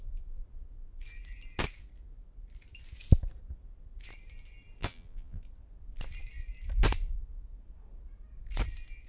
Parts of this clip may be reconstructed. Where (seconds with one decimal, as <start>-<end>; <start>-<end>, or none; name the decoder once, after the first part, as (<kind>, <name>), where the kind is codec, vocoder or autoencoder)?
4.8-5.4 (vocoder, BigVGAN v2)

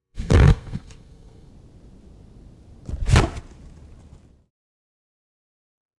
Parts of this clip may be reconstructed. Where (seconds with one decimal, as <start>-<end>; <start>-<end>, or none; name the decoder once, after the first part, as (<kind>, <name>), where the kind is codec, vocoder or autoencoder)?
0.0-1.5 (codec, SNAC); 4.8-6.0